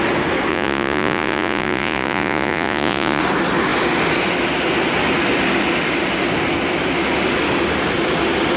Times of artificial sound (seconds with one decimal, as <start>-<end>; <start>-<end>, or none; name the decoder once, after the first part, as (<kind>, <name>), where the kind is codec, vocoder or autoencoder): 0.5-3.2 (vocoder, Vocos)